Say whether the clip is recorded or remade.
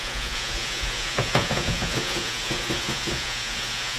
remade